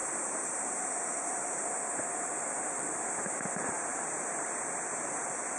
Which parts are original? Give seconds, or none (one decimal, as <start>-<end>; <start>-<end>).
3.4-3.9